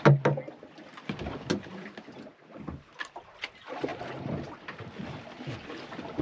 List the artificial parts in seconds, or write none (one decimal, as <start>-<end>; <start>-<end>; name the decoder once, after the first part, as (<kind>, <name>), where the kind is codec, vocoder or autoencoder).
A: none